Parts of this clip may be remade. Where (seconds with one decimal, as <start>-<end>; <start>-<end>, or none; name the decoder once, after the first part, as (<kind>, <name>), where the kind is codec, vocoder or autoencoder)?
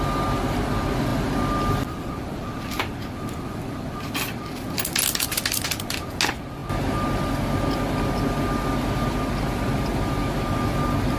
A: none